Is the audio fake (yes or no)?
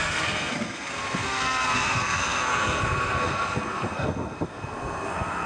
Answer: yes